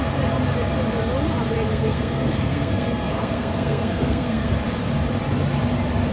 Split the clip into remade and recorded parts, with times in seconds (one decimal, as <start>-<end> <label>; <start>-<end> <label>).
0.0-1.7 recorded; 1.7-4.5 remade; 4.5-6.1 recorded